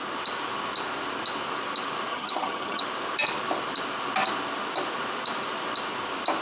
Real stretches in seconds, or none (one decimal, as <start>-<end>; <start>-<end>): 0.0-2.1; 2.8-6.4